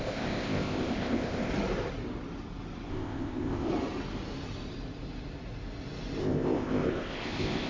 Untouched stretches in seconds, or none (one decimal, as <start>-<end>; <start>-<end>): 1.5-2.9; 3.7-6.2